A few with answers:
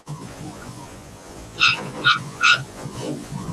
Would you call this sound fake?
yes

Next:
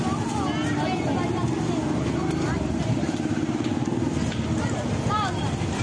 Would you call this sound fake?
no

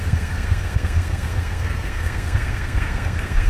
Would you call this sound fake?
yes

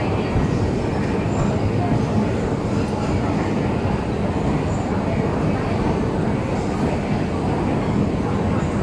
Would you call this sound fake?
no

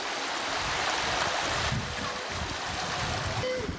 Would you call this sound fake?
no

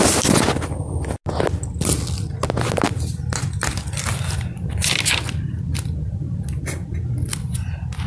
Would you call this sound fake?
no